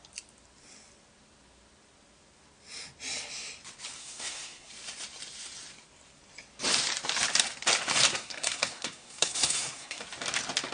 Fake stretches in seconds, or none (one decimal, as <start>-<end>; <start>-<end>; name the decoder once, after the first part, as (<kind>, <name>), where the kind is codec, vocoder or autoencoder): 4.0-4.7 (codec, SNAC); 8.1-10.0